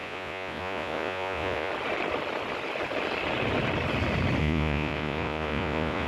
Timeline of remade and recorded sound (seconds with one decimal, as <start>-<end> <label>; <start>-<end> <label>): 0.0-1.7 remade; 1.7-4.4 recorded; 4.4-6.1 remade